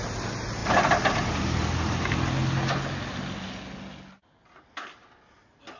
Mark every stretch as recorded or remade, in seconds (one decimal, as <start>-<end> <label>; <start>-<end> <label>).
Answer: 0.0-5.8 recorded